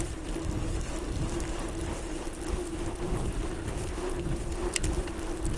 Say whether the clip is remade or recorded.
recorded